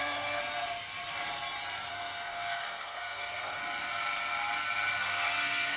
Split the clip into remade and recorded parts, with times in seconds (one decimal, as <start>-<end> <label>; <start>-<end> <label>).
0.0-0.4 remade; 0.4-1.9 recorded; 1.9-3.6 remade; 3.6-5.0 recorded; 5.0-5.8 remade

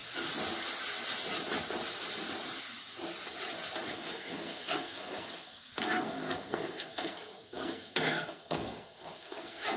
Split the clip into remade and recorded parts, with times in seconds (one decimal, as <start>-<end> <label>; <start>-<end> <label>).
0.0-3.9 recorded; 3.9-9.8 remade

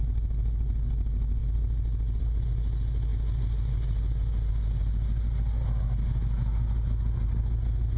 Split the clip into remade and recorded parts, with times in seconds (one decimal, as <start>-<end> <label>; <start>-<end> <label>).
0.0-8.0 recorded